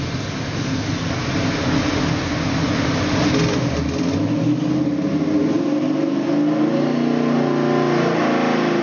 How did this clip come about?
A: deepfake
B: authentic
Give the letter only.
B